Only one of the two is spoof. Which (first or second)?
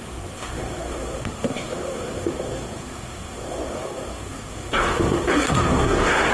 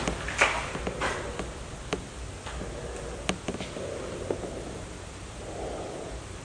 first